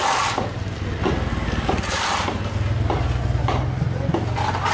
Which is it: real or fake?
real